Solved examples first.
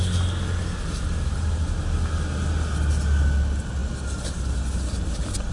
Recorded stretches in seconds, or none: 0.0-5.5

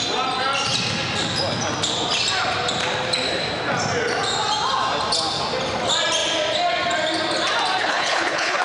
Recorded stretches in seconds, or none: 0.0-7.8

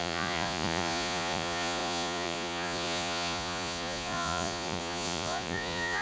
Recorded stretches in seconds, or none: none

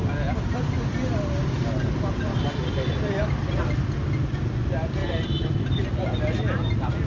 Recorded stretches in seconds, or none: 0.0-2.3; 3.6-5.0; 5.8-7.1